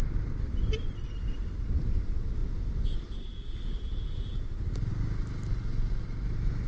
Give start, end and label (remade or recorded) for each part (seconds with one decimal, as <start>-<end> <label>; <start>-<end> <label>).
0.0-6.7 recorded